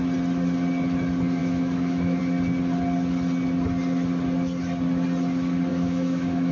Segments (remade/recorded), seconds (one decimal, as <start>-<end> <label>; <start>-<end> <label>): 0.0-1.4 recorded; 1.4-2.2 remade; 2.2-5.7 recorded; 5.7-6.5 remade